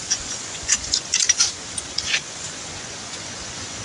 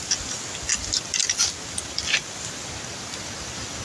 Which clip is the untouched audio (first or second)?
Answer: second